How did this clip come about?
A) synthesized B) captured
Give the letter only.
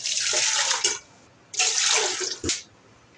B